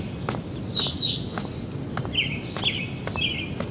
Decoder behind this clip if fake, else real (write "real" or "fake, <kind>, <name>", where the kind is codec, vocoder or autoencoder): real